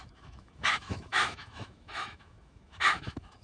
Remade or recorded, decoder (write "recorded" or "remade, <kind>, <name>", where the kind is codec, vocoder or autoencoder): remade, autoencoder, DAC-VAE